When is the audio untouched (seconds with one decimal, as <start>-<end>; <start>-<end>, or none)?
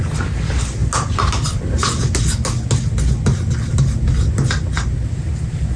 0.0-5.8